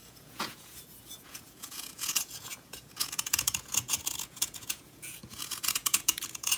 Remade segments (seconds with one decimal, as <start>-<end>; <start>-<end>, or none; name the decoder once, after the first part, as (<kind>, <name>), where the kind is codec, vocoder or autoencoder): 0.0-6.6 (vocoder, Vocos)